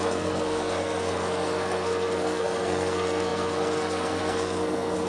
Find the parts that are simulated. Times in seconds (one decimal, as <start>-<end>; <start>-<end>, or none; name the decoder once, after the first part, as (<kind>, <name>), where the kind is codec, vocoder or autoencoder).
0.0-5.1 (codec, SNAC)